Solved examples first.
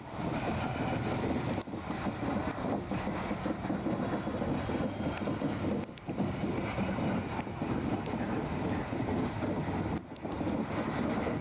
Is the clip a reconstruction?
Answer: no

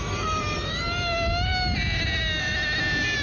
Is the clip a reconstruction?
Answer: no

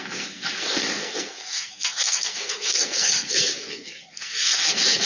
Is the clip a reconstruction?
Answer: yes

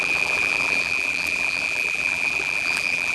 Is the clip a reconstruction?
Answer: yes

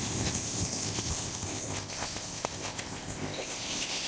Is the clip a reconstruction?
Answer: yes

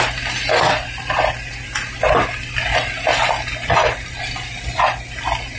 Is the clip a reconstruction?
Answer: no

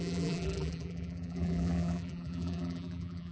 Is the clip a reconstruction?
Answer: yes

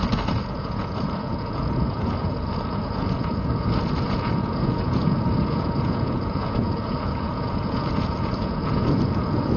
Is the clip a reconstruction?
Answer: yes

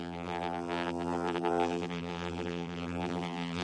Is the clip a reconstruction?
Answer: yes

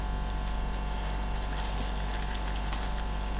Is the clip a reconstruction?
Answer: no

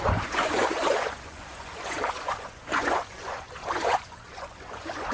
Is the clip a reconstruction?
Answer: yes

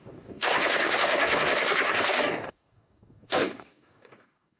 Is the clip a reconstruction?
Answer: yes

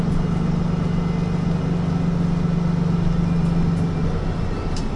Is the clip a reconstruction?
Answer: no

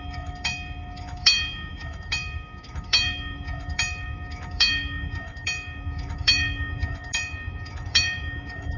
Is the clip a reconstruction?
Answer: yes